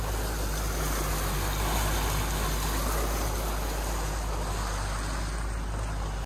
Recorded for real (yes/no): yes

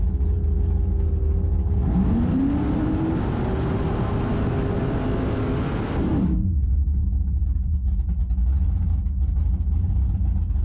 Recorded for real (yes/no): yes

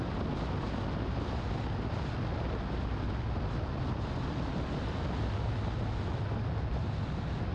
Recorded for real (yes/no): yes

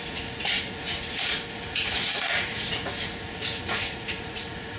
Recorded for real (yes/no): no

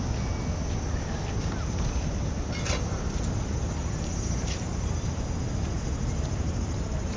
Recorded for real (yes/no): yes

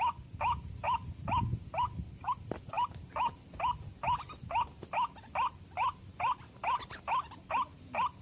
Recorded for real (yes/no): yes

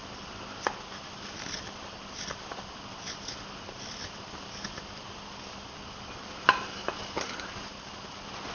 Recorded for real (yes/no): yes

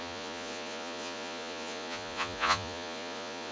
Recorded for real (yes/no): no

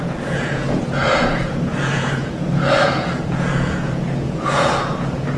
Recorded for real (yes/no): no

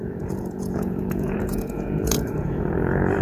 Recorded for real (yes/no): no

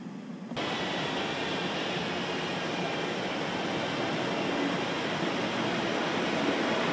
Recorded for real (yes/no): yes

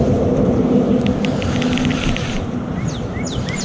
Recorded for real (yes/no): yes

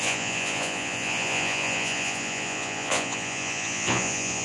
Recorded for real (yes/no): no